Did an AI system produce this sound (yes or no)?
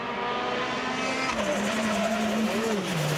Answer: no